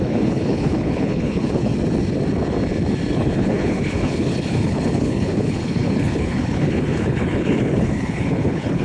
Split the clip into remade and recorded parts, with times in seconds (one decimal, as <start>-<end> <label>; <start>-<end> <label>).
0.0-1.7 remade; 1.7-3.1 recorded; 3.1-8.8 remade